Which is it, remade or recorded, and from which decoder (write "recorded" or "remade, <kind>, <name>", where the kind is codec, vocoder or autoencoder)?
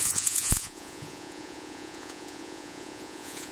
remade, vocoder, Vocos